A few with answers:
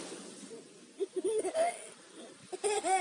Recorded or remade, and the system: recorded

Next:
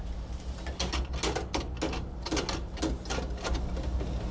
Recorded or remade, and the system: recorded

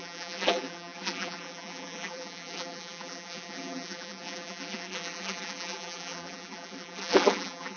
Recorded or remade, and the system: remade, vocoder, BigVGAN v2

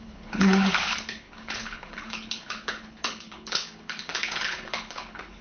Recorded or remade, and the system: remade, codec, HILCodec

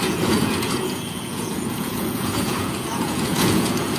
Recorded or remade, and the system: remade, vocoder, Vocos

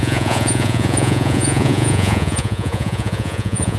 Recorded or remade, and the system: remade, vocoder, Vocos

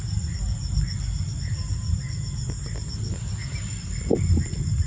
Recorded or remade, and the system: recorded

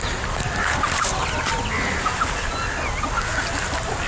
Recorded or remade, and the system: recorded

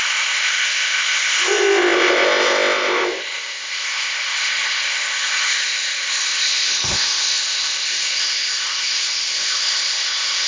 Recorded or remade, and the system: remade, codec, ZipCodec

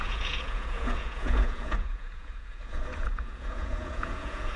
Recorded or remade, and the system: remade, vocoder, Vocos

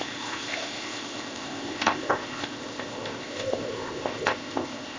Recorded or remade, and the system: remade, codec, ZipCodec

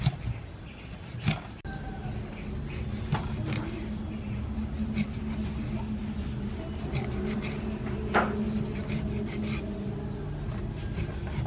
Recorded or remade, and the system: recorded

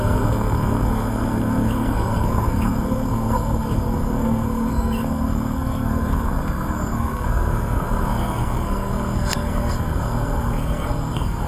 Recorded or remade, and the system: remade, codec, SNAC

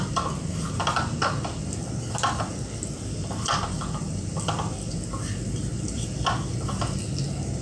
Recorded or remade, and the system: recorded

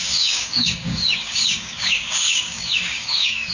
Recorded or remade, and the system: remade, codec, DAC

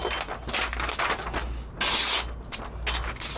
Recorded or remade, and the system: recorded